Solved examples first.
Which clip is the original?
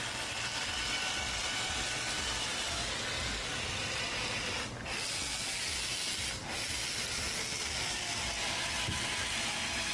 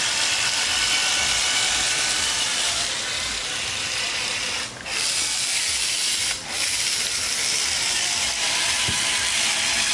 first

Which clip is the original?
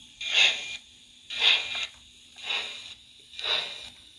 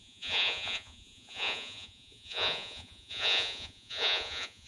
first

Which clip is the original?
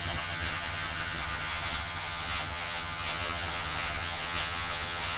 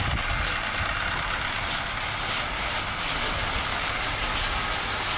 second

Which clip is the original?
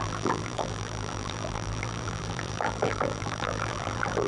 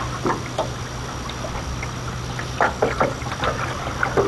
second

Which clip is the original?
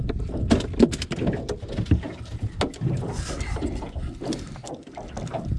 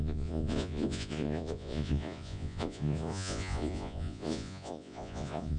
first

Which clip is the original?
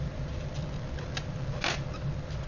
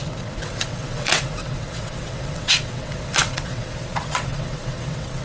first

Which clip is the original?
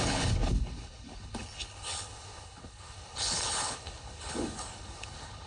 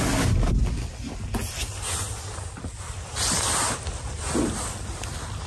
second